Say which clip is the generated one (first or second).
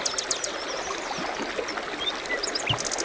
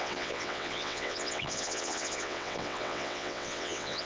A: second